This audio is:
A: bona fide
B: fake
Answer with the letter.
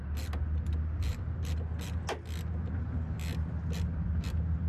A